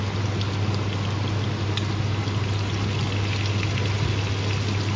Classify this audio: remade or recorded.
recorded